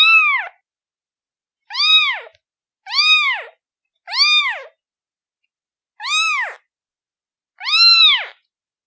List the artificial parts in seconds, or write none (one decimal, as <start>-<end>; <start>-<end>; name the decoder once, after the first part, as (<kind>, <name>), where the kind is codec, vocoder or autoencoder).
none